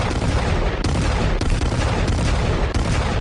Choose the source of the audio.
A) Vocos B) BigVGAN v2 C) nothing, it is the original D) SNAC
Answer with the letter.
B